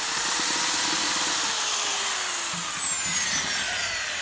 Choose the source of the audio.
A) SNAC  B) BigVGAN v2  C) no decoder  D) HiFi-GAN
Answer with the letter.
C